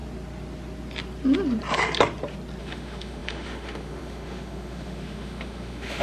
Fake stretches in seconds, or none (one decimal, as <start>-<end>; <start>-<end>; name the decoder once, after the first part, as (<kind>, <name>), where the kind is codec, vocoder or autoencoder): 2.6-6.0 (autoencoder, DAC-VAE)